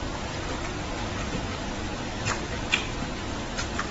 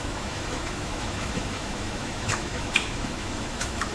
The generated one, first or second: second